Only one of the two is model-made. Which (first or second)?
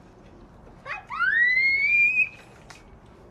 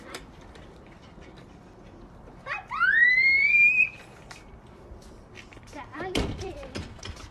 second